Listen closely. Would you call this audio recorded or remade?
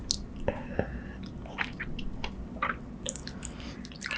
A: recorded